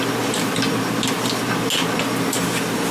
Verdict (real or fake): real